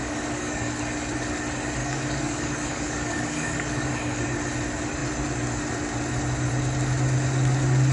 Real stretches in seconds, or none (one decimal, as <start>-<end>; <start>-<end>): 0.8-1.8; 4.2-7.9